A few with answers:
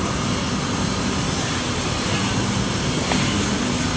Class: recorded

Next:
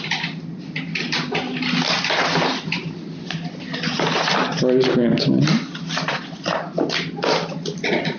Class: recorded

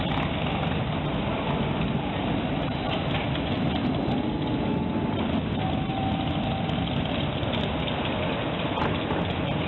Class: recorded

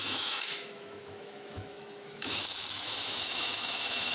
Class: remade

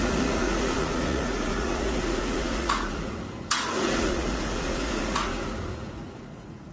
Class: remade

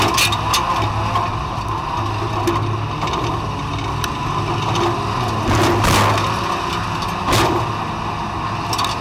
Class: recorded